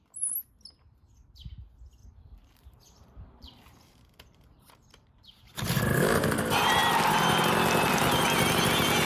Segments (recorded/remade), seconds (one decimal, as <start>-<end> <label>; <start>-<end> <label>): 0.0-2.0 recorded; 2.0-5.8 remade; 5.8-9.0 recorded